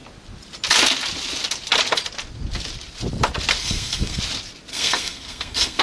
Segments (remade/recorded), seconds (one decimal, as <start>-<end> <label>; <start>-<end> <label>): 0.0-3.6 recorded; 3.6-4.2 remade; 4.2-4.7 recorded; 4.7-5.8 remade